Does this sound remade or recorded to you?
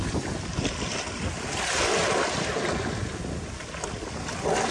recorded